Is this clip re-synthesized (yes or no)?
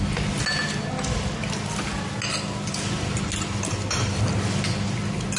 no